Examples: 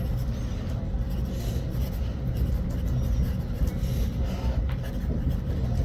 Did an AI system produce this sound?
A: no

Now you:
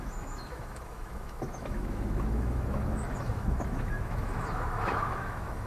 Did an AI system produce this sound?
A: yes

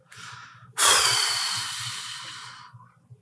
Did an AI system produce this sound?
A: yes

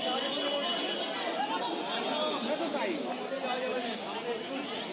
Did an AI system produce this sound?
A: no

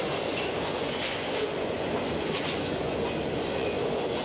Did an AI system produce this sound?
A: yes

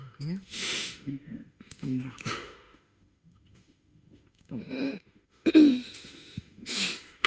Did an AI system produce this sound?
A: yes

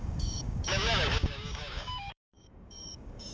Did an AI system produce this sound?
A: yes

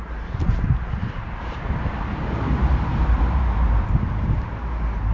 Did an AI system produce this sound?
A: yes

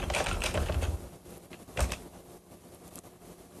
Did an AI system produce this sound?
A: yes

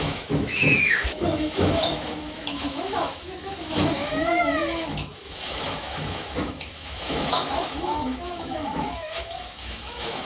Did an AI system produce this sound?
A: yes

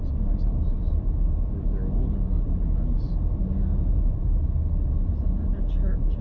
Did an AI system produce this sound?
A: no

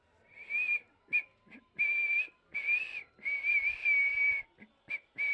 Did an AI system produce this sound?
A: no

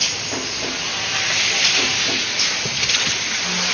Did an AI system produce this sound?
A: no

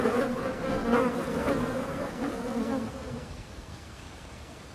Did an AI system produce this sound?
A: yes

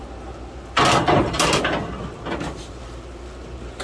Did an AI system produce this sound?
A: no